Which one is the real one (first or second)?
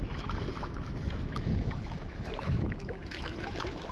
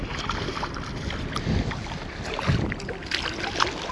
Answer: second